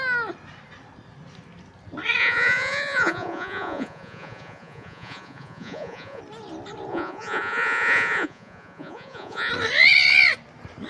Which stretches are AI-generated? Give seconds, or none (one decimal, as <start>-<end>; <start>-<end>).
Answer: 2.2-6.2; 6.9-9.5